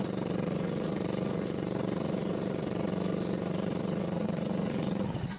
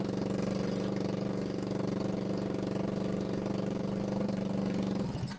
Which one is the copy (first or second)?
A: first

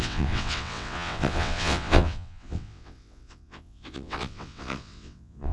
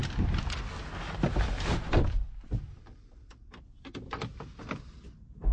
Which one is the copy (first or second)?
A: first